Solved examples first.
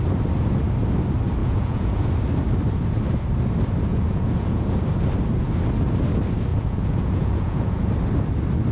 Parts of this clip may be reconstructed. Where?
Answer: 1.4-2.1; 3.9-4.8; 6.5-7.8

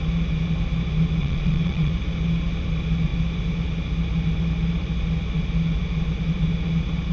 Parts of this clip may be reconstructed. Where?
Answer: 1.2-1.9

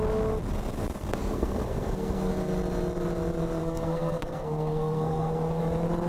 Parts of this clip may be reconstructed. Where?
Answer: 1.2-2.3; 3.6-5.6

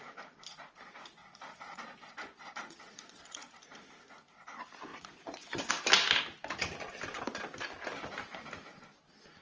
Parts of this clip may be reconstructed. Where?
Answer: 1.2-3.6; 4.9-5.7

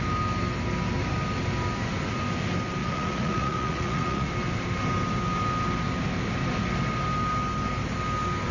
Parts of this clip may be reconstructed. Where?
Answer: 2.8-4.3